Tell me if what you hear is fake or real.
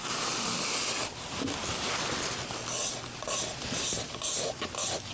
real